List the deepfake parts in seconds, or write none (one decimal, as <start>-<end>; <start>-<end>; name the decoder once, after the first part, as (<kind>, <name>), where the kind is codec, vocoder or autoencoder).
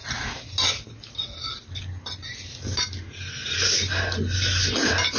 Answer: none